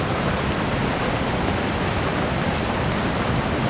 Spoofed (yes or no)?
no